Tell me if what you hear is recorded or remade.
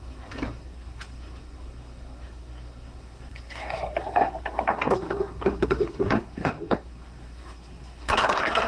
remade